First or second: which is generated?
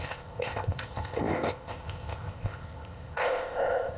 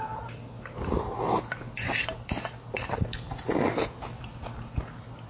first